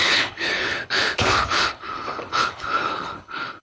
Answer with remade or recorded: remade